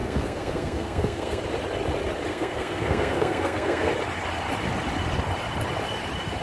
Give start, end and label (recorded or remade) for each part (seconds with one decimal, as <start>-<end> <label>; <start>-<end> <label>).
0.0-1.4 remade; 1.4-2.3 recorded; 2.3-3.9 remade; 3.9-6.4 recorded